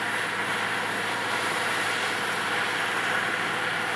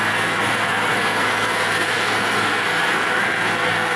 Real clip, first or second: first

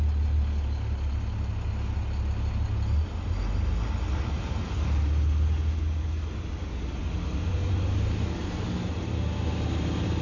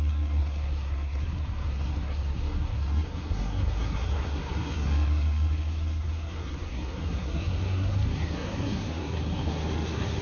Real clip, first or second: first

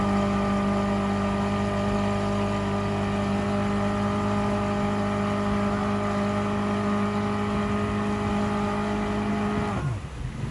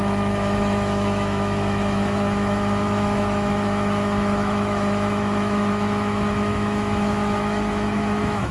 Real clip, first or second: first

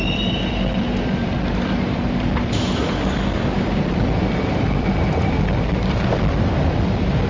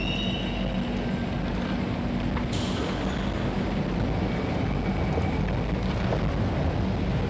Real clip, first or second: second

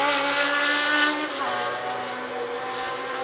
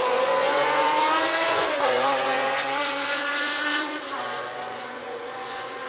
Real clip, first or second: first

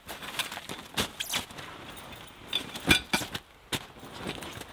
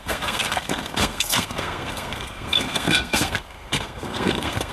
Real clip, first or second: first